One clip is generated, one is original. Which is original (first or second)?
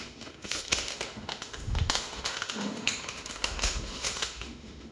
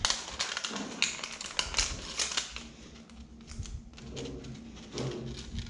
second